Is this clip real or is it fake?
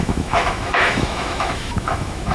fake